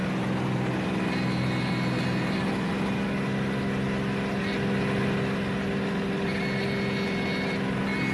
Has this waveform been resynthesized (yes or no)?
no